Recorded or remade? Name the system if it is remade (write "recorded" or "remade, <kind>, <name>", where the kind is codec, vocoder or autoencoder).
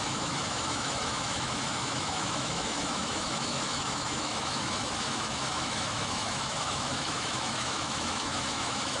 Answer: remade, autoencoder, DAC-VAE